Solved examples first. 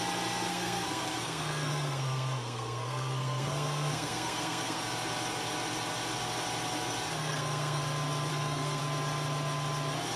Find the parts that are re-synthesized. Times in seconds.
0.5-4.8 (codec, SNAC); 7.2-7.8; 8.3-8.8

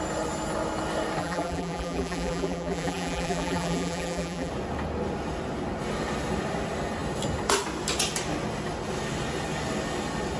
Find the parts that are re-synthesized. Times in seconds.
1.2-4.5 (vocoder, BigVGAN v2)

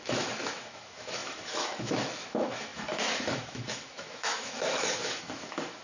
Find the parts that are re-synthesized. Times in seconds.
0.0-5.8 (autoencoder, DAC-VAE)

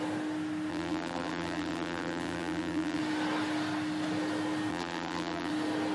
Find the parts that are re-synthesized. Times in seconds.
0.7-3.0 (vocoder, BigVGAN v2); 4.7-5.5